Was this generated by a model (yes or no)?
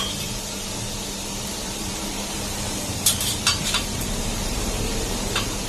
yes